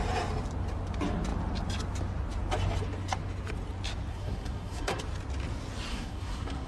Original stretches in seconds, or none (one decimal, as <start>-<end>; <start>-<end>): 0.0-4.1; 5.0-5.9